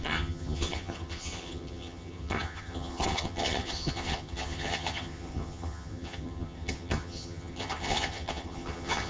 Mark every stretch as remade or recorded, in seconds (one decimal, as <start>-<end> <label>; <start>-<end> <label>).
0.0-9.1 remade

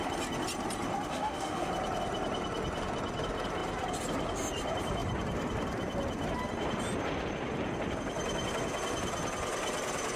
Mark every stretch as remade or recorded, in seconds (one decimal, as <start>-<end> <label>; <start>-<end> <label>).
0.0-1.1 recorded; 1.1-1.7 remade; 1.7-10.2 recorded

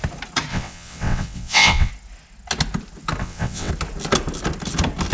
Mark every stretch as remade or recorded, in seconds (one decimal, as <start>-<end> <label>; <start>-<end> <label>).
0.0-0.5 recorded; 0.5-1.9 remade; 1.9-3.2 recorded; 3.2-3.7 remade; 3.7-5.1 recorded

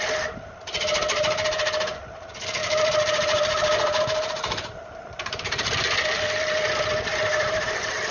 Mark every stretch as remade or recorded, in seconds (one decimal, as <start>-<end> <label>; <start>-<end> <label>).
0.0-2.6 recorded; 2.6-6.3 remade; 6.3-7.1 recorded; 7.1-8.1 remade

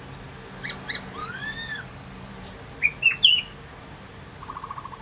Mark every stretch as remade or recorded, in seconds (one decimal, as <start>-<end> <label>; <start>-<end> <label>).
0.0-1.2 recorded; 1.2-2.3 remade; 2.3-5.0 recorded

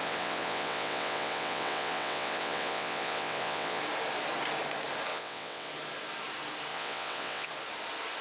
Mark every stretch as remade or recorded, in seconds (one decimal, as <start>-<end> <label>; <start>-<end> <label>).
0.0-3.8 remade; 3.8-5.1 recorded; 5.1-5.7 remade; 5.7-6.7 recorded; 6.7-7.5 remade; 7.5-8.2 recorded